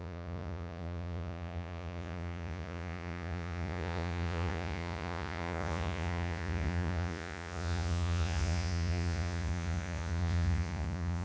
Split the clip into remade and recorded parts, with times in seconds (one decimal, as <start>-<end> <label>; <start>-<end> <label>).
0.0-11.2 remade